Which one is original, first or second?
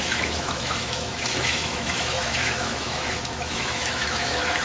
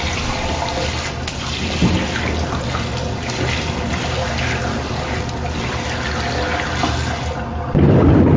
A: second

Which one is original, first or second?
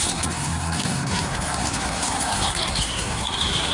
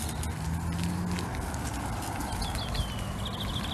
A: second